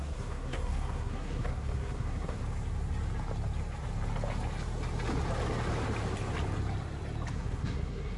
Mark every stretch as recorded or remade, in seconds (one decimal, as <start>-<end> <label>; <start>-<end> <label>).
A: 0.0-2.4 remade; 2.4-7.3 recorded; 7.3-8.2 remade